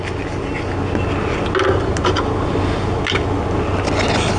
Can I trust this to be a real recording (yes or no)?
yes